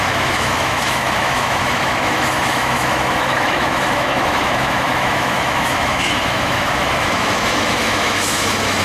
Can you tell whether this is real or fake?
fake